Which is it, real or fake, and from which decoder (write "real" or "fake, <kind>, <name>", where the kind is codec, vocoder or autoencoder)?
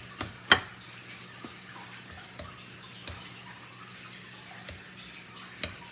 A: real